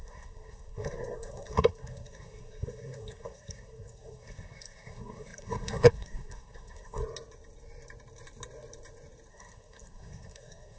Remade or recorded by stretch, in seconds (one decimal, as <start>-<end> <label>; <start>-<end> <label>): 0.0-7.0 remade; 7.0-9.3 recorded; 9.3-10.8 remade